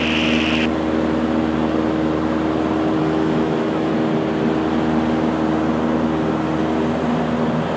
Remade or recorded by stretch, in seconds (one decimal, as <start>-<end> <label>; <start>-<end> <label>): 0.0-3.0 recorded; 3.0-3.9 remade; 3.9-7.8 recorded